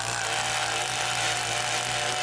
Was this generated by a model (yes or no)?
no